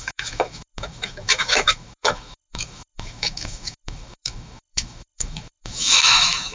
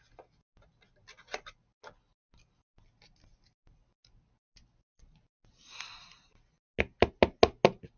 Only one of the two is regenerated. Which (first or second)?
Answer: first